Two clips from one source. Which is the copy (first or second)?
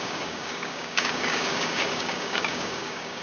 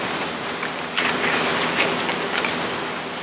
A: first